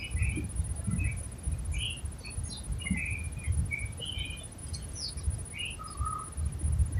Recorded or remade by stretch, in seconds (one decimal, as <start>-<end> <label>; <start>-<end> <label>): 0.0-4.6 recorded; 4.6-5.1 remade; 5.1-7.0 recorded